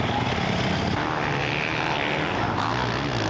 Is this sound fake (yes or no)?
no